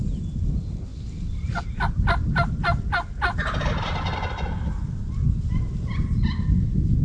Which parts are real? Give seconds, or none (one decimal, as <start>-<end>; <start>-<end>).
0.0-7.0